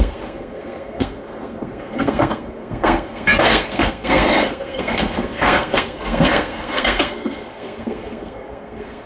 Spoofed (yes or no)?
yes